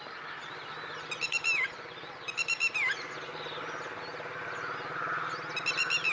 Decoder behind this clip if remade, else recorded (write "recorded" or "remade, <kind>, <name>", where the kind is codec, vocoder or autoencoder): recorded